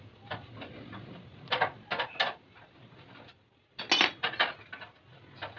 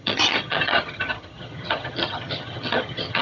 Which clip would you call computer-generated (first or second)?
second